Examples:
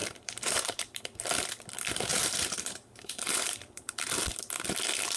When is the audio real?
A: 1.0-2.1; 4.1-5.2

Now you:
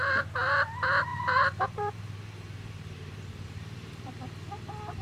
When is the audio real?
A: 0.0-1.1; 4.1-5.0

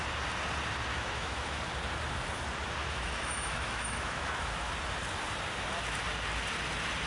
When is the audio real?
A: 0.0-0.9; 1.6-2.8; 4.7-7.1

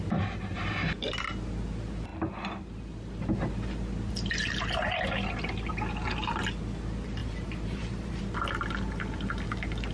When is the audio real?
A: 0.0-7.2; 8.2-9.9

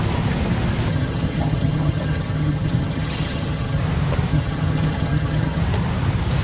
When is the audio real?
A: 0.0-0.9; 3.8-4.3; 5.6-6.4